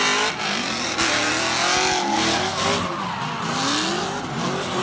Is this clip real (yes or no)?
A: yes